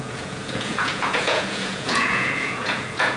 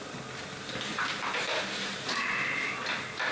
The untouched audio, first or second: second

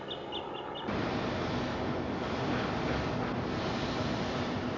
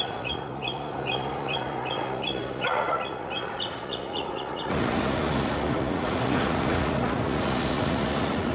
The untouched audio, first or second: first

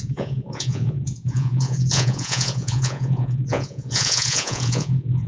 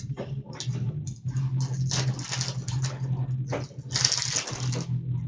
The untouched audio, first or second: second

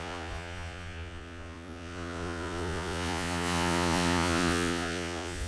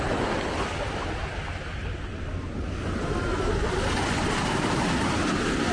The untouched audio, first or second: second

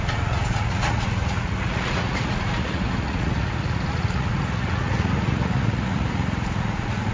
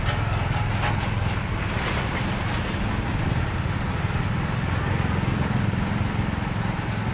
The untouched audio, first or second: second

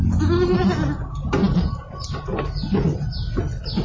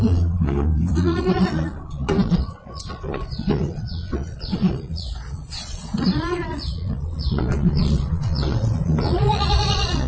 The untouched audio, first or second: first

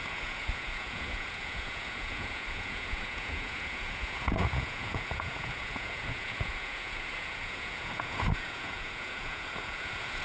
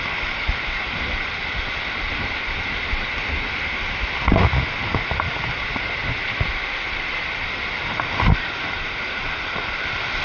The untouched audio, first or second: second